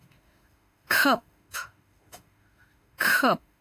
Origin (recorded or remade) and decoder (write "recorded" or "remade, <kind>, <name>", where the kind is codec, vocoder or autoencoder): remade, autoencoder, DAC-VAE